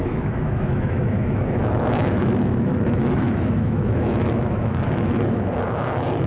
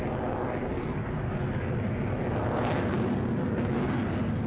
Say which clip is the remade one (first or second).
first